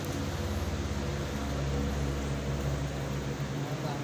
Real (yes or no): yes